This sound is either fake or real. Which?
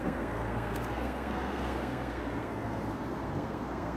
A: fake